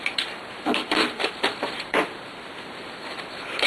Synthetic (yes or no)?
yes